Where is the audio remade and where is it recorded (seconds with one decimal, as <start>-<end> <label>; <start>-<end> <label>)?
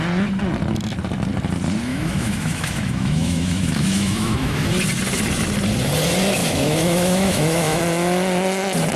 0.0-1.9 recorded; 1.9-4.7 remade; 4.7-6.4 recorded; 6.4-7.8 remade; 7.8-9.0 recorded